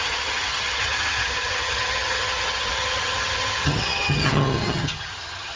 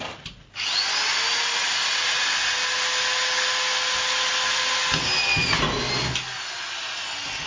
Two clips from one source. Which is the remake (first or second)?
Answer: first